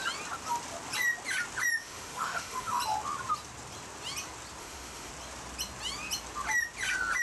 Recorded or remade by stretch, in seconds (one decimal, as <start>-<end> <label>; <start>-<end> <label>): 0.0-1.8 recorded; 1.8-2.8 remade; 2.8-4.6 recorded; 4.6-5.1 remade; 5.1-7.2 recorded